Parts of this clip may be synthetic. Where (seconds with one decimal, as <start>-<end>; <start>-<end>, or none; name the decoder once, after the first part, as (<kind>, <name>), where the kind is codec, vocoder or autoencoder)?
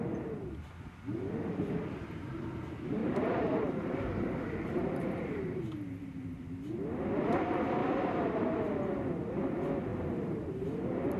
3.0-5.6 (vocoder, BigVGAN v2); 7.8-8.6; 9.9-11.2